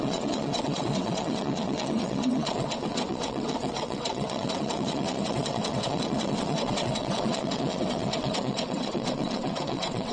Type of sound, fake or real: fake